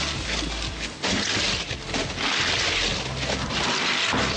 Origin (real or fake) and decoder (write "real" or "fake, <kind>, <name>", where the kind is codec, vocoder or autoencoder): real